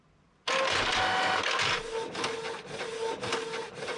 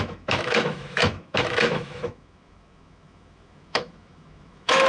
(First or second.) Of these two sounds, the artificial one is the second